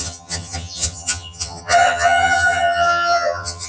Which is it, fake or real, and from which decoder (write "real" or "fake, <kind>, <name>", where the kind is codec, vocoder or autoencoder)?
fake, vocoder, HiFi-GAN